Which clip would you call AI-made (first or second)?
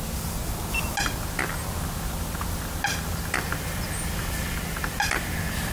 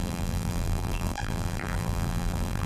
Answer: second